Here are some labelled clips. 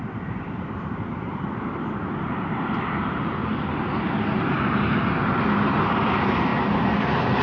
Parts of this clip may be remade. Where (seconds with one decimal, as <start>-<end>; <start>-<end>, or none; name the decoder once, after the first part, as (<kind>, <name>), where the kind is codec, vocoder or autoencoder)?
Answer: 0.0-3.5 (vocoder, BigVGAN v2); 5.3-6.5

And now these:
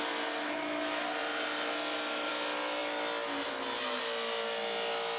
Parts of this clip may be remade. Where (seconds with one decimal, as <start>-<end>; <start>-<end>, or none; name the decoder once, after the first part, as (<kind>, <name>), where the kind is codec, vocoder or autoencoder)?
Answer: none

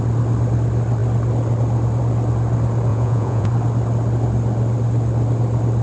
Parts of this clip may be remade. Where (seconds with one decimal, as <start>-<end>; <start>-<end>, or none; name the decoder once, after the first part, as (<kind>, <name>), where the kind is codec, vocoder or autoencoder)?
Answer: 2.9-3.5 (vocoder, Vocos)